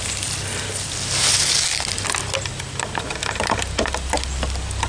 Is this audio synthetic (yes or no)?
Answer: no